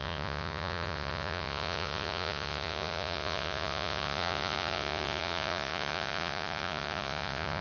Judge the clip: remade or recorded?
remade